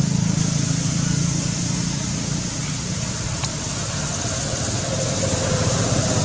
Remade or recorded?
recorded